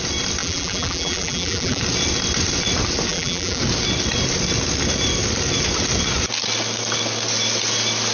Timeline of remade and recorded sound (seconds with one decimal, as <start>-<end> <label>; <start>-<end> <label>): 0.0-0.4 recorded; 0.4-1.8 remade; 1.8-3.1 recorded; 3.1-3.6 remade; 3.6-8.1 recorded